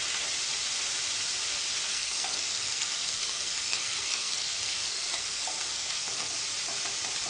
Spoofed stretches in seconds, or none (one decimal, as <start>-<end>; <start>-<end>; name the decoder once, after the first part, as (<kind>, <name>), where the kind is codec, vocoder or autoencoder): 1.9-6.3 (codec, SNAC)